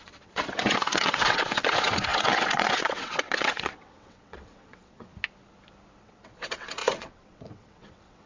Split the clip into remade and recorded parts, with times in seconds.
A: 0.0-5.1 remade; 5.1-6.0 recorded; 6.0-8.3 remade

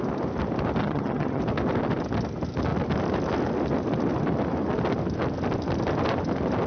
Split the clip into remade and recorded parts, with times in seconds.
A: 0.0-0.8 recorded; 0.8-1.4 remade; 1.4-6.7 recorded

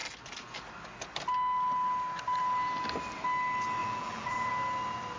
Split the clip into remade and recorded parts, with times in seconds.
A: 0.0-3.8 recorded; 3.8-4.5 remade; 4.5-5.2 recorded